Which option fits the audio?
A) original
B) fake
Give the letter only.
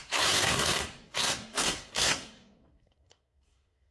B